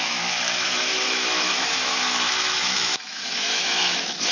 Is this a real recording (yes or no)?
no